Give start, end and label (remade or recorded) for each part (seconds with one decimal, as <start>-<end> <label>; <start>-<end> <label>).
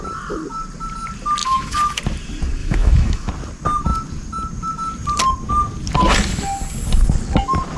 0.0-1.4 recorded; 1.4-2.0 remade; 2.0-2.6 recorded; 2.6-3.3 remade; 3.3-7.8 recorded